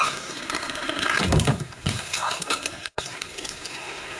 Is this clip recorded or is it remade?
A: remade